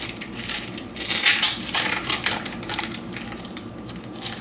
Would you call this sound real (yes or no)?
no